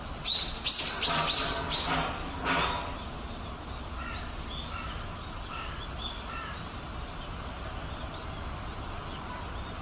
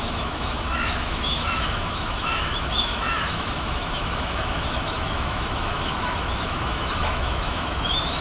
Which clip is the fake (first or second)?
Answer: second